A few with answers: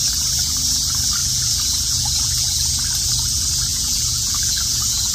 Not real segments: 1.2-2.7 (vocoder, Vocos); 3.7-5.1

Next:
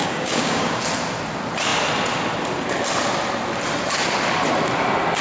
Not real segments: 0.0-0.8 (codec, DAC)

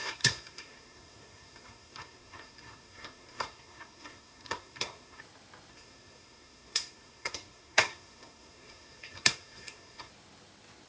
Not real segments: 0.0-5.2 (codec, SNAC); 5.7-10.1

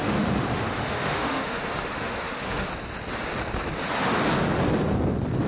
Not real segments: 0.0-2.7 (autoencoder, DAC-VAE)

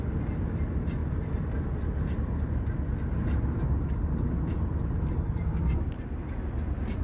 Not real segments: none

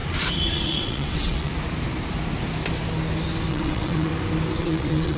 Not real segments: 0.5-1.5 (vocoder, WaveNeXt); 3.5-4.1; 4.6-5.2

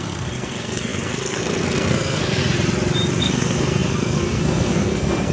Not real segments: 0.0-2.4 (codec, SNAC); 3.2-5.3

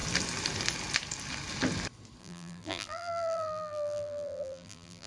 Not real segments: 2.2-5.1 (vocoder, BigVGAN v2)